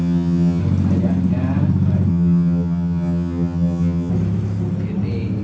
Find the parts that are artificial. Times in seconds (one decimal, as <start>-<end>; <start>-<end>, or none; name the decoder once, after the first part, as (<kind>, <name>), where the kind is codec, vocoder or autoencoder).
0.0-0.6 (vocoder, HiFi-GAN); 2.1-4.1